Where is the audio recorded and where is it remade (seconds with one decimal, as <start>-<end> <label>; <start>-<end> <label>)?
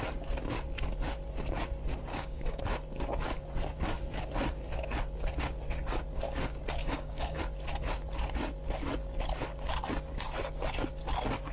0.0-2.1 recorded; 2.1-2.6 remade; 2.6-6.8 recorded; 6.8-7.4 remade; 7.4-11.5 recorded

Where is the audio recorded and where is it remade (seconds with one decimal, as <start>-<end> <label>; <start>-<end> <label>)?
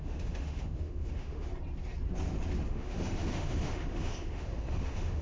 0.0-1.5 remade; 1.5-2.7 recorded; 2.7-5.2 remade